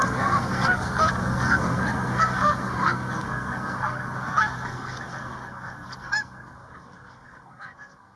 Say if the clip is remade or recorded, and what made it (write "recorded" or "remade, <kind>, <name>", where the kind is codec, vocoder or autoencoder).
remade, codec, SNAC